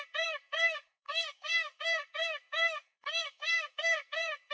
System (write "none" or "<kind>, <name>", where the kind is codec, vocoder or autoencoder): codec, SNAC